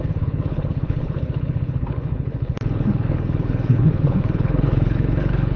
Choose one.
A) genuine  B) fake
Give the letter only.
B